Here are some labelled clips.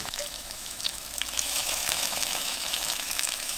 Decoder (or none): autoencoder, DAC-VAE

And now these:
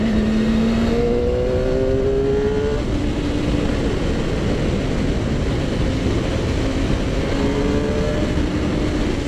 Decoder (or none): none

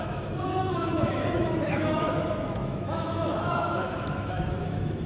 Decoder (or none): autoencoder, DAC-VAE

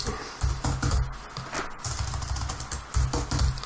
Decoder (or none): none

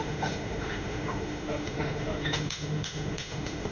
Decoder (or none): autoencoder, DAC-VAE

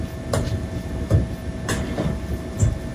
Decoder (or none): none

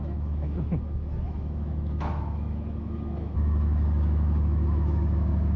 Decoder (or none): autoencoder, DAC-VAE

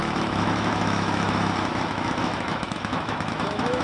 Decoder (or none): autoencoder, DAC-VAE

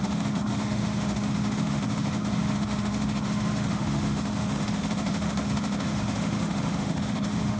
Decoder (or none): autoencoder, DAC-VAE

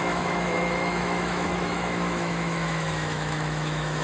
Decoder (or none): autoencoder, DAC-VAE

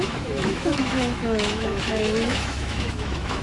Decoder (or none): autoencoder, DAC-VAE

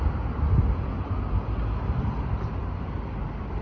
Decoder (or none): none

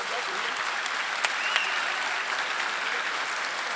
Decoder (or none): none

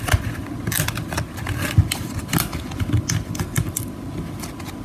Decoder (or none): none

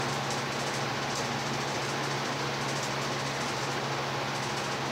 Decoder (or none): none